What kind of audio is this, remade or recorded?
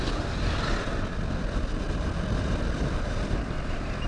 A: recorded